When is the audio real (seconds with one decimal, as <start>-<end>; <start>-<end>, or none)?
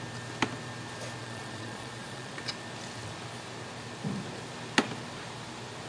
0.0-1.2; 2.4-5.9